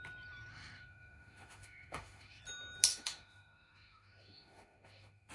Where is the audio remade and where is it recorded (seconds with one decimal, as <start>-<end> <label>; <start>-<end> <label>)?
0.0-0.5 recorded; 0.5-2.4 remade; 2.4-2.9 recorded; 2.9-5.3 remade